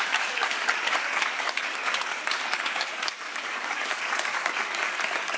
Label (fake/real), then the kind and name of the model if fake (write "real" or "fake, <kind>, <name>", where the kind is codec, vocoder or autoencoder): fake, codec, DAC